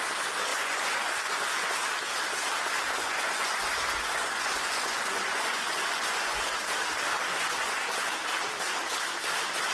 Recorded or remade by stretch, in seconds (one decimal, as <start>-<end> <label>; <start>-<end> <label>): 0.0-0.5 recorded; 0.5-1.7 remade; 1.7-3.0 recorded; 3.0-6.6 remade; 6.6-7.3 recorded; 7.3-7.8 remade; 7.8-9.7 recorded